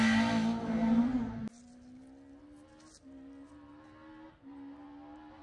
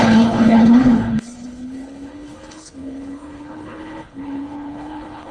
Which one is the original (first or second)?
first